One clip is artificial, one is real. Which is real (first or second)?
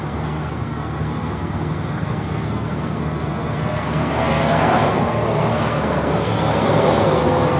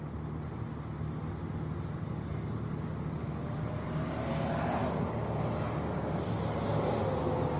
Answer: second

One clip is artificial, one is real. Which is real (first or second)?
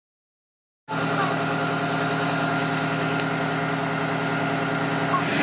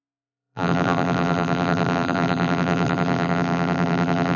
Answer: first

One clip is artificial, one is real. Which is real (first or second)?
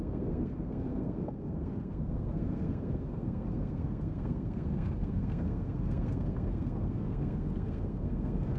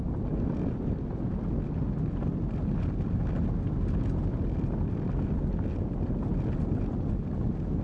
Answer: second